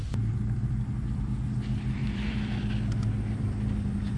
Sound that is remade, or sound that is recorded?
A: remade